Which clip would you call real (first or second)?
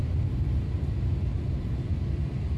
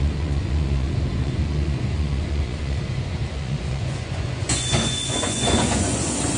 first